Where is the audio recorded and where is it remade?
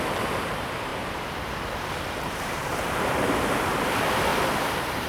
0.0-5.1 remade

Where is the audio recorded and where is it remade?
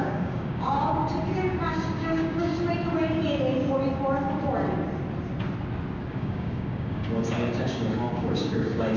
0.0-1.0 remade; 1.0-1.7 recorded; 1.7-2.5 remade; 2.5-6.1 recorded; 6.1-9.0 remade